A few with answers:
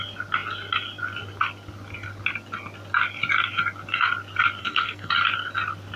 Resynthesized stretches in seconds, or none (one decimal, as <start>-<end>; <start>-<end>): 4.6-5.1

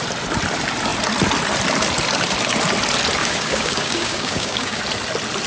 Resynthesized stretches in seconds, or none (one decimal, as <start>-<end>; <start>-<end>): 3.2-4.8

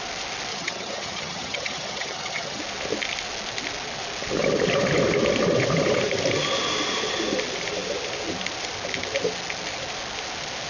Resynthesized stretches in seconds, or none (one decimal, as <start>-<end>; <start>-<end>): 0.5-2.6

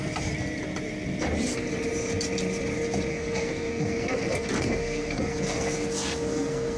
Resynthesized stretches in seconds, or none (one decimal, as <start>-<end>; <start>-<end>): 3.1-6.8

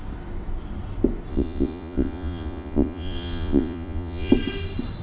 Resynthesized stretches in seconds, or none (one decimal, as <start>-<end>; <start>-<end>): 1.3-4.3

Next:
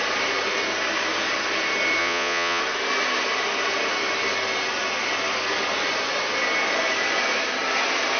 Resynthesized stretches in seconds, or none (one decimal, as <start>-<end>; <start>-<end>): 2.0-2.6

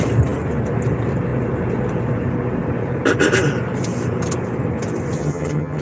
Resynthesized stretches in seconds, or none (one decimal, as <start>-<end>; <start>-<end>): 5.2-5.8